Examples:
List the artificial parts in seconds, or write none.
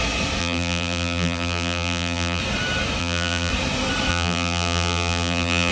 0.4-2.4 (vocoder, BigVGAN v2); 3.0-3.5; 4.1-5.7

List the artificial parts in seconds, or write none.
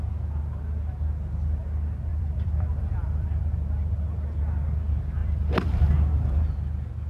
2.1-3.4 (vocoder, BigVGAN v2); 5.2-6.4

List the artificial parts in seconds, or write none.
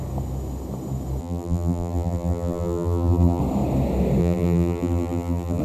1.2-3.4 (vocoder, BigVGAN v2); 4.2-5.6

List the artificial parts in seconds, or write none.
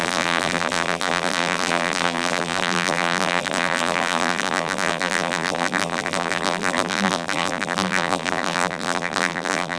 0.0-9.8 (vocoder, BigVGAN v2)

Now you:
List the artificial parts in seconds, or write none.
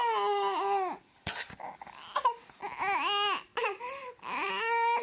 3.5-4.5 (vocoder, BigVGAN v2)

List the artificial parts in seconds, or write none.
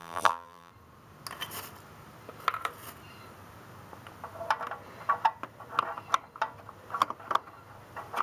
0.0-0.7 (vocoder, BigVGAN v2)